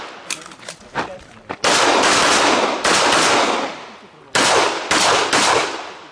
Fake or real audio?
real